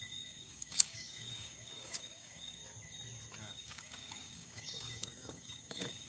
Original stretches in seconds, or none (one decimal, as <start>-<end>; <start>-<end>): 2.6-3.4